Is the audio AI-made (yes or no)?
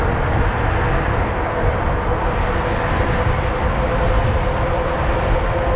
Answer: no